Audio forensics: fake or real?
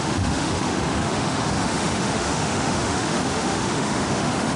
fake